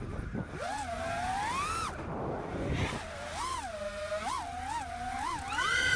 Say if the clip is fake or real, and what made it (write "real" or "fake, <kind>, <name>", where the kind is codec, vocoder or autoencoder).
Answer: real